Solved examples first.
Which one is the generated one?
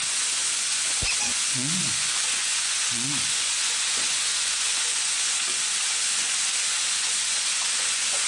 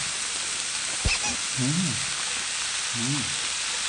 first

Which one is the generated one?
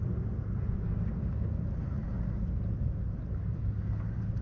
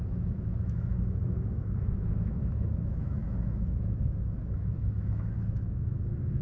second